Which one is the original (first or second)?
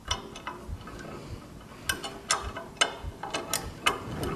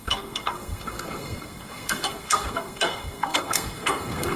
first